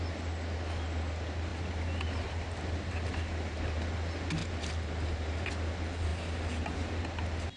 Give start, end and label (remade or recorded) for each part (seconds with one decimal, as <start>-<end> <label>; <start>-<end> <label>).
0.0-4.4 recorded; 4.4-5.5 remade; 5.5-7.6 recorded